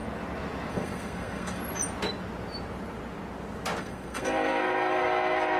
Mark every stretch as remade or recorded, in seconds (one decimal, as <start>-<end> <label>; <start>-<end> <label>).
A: 0.0-0.7 recorded; 0.7-1.6 remade; 1.6-3.8 recorded; 3.8-5.6 remade